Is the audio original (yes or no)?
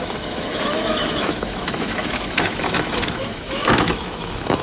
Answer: no